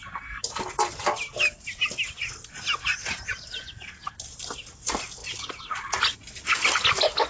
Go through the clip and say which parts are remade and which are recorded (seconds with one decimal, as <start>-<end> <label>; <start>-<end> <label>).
0.0-7.3 recorded